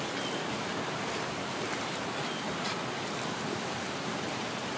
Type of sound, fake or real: real